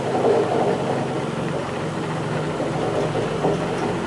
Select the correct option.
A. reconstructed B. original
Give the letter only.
B